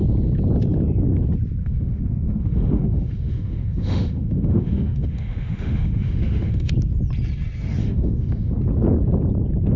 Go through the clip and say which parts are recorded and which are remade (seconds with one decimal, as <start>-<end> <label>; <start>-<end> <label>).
0.0-1.6 recorded; 1.6-6.7 remade; 6.7-7.8 recorded; 7.8-8.5 remade; 8.5-9.8 recorded